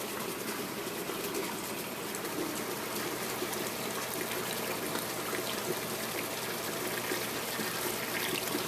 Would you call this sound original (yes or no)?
no